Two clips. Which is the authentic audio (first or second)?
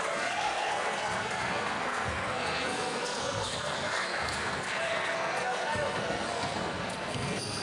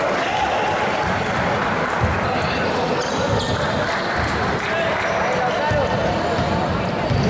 second